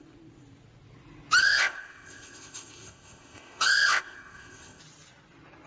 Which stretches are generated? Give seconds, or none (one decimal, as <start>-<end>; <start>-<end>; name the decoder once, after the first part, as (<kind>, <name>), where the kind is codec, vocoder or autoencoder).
1.4-4.8 (codec, ZipCodec)

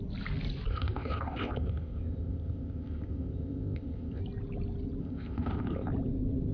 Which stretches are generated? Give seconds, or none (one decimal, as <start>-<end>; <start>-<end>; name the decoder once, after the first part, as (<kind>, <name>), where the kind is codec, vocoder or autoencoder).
0.7-4.2 (codec, ZipCodec); 5.0-5.9

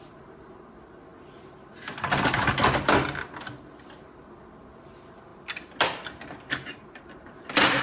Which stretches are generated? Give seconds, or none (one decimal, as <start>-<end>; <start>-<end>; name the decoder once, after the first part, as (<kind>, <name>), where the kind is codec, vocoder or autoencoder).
none

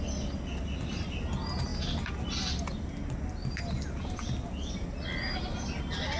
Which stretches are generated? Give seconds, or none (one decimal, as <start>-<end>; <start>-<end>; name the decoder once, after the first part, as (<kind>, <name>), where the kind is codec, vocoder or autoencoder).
none

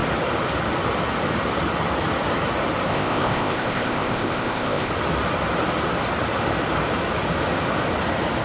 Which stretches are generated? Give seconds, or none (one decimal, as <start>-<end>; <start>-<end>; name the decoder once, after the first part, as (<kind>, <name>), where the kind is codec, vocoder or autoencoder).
2.9-4.9 (codec, ZipCodec)

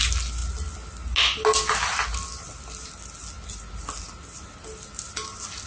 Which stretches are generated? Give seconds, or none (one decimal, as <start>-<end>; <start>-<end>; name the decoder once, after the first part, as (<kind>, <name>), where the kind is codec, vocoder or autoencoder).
none

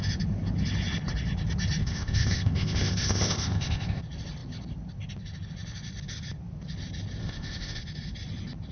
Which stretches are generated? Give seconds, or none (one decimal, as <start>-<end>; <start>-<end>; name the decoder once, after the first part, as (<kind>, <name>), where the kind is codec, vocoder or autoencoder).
1.8-4.0 (codec, ZipCodec); 7.2-7.8